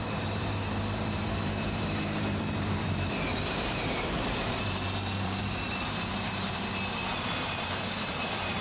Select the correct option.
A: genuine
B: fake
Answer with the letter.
B